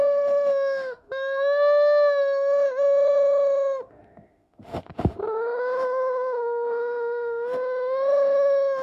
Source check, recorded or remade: remade